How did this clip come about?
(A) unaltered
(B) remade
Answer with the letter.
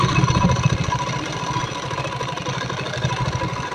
A